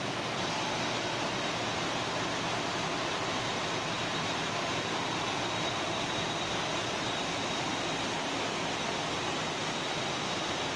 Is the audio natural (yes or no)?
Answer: yes